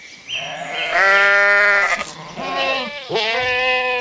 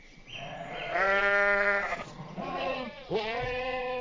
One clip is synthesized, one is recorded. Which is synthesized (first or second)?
second